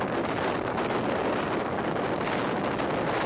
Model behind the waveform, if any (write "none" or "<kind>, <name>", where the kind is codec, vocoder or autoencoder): none